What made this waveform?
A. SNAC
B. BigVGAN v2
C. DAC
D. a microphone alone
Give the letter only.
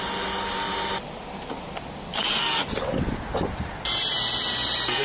D